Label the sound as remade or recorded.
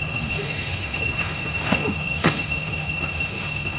remade